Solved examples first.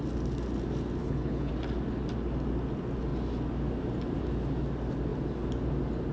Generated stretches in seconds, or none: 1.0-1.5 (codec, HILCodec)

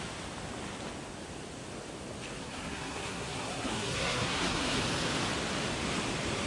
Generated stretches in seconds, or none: 2.4-4.8 (codec, SNAC)